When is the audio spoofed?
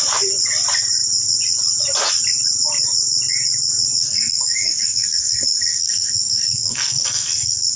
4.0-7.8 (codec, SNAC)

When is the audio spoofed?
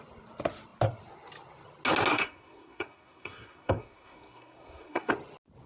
2.1-5.1 (codec, SNAC)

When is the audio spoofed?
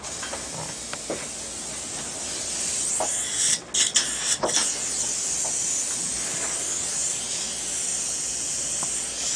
none